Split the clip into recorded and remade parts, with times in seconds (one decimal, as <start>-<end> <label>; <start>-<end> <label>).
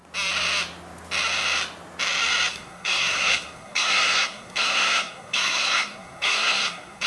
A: 0.0-2.5 recorded; 2.5-7.1 remade